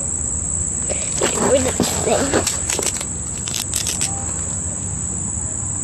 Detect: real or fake real